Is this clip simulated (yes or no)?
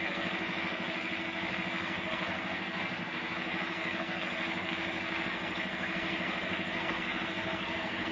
yes